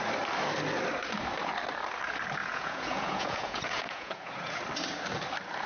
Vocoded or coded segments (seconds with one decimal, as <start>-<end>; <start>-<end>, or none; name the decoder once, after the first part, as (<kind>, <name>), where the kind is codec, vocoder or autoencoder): 2.4-4.6 (vocoder, Vocos)